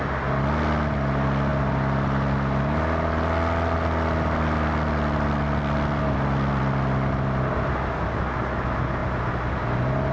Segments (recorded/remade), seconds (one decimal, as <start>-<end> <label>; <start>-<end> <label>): 0.0-10.1 recorded